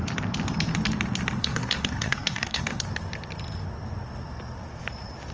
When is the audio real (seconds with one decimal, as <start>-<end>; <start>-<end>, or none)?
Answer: 0.0-1.4; 2.8-5.3